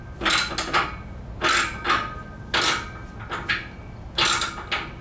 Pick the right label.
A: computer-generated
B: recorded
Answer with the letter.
B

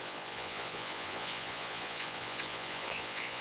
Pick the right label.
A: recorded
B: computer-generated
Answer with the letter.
B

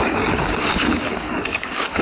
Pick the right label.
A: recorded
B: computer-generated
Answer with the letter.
B